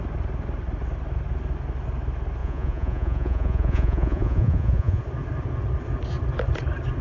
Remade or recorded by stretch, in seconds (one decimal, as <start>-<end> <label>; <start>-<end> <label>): 0.0-2.4 recorded; 2.4-5.0 remade; 5.0-7.0 recorded